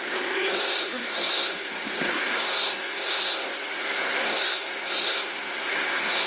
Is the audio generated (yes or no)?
yes